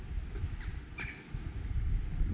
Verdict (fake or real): real